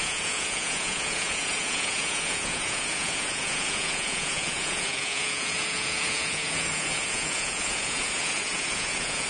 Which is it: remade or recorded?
remade